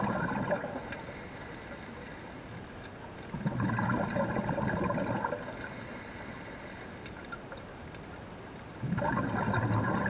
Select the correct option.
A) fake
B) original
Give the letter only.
B